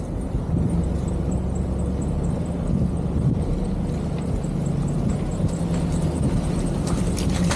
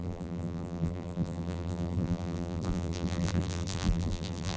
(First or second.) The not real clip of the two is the second